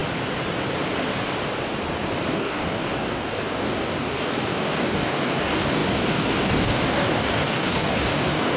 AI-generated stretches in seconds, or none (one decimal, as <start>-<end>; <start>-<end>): 2.3-8.6